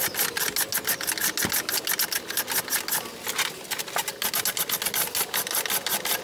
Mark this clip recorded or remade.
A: recorded